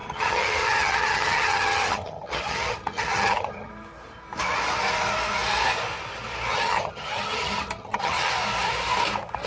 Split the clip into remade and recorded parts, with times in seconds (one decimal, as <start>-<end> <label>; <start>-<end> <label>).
0.0-3.7 remade; 3.7-6.5 recorded; 6.5-8.3 remade; 8.3-9.5 recorded